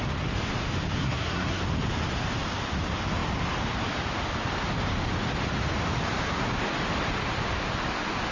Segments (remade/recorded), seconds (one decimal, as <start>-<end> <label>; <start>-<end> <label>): 0.0-1.0 recorded; 1.0-1.6 remade; 1.6-8.3 recorded